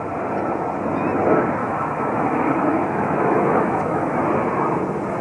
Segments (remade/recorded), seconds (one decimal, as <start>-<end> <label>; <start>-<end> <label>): 0.0-1.6 recorded; 1.6-4.2 remade; 4.2-5.2 recorded